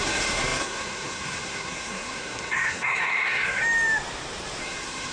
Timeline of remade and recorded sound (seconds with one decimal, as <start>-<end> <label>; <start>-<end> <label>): 0.0-3.6 remade; 3.6-4.6 recorded; 4.6-5.1 remade